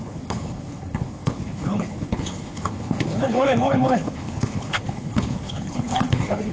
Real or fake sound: fake